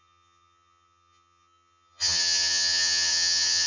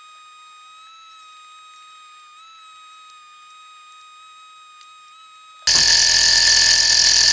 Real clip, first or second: second